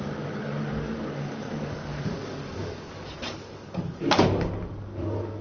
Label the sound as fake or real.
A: fake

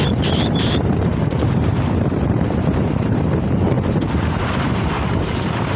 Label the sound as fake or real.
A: fake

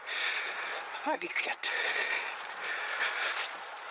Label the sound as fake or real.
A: fake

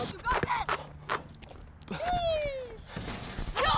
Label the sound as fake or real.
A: real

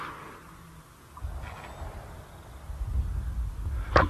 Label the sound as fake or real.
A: real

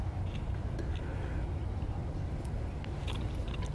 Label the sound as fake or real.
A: real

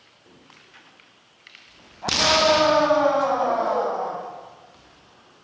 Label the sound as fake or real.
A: real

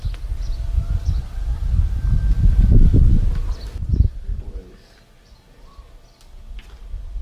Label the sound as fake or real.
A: real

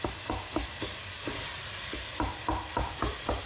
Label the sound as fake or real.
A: real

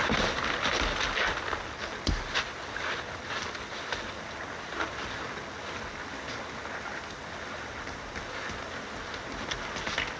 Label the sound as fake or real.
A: real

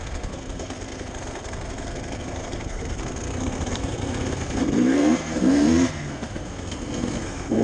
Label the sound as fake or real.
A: fake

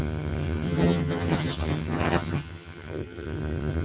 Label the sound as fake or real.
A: fake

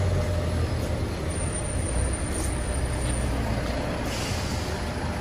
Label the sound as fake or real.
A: real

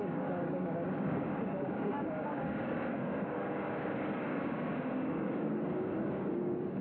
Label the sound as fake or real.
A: fake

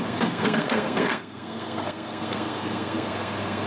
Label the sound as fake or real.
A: fake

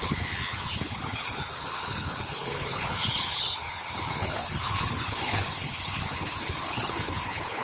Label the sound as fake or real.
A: fake